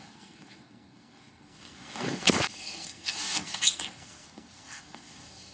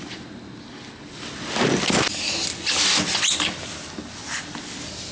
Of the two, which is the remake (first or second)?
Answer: first